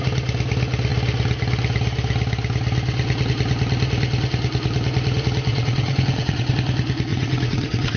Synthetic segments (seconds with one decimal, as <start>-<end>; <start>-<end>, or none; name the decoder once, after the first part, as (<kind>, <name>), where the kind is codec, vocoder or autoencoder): 5.5-6.5 (vocoder, WaveNeXt); 7.1-8.0